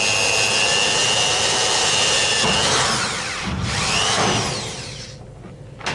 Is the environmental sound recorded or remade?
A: recorded